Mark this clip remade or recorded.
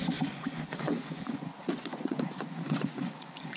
remade